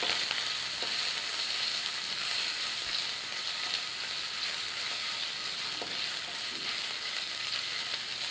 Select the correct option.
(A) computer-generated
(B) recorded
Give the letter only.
B